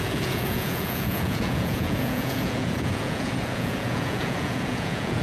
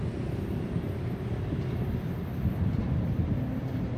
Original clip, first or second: second